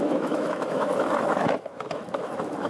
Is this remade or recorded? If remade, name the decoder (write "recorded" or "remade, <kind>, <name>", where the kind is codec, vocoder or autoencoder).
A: remade, autoencoder, DAC-VAE